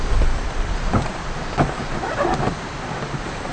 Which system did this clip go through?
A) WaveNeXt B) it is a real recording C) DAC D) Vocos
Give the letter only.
B